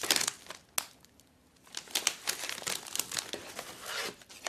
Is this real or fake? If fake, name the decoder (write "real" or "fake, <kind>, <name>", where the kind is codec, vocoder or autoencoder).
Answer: real